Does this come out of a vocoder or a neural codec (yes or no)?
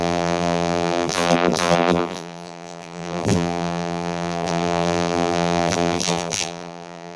yes